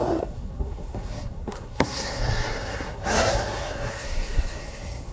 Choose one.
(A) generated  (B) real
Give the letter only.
A